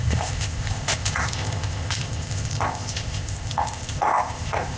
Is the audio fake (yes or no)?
yes